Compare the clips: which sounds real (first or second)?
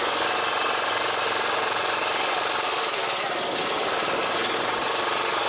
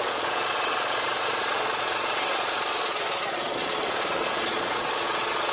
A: first